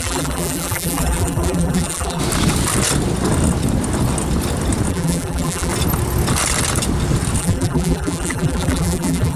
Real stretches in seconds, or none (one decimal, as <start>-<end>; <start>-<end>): 2.2-4.9; 5.7-7.4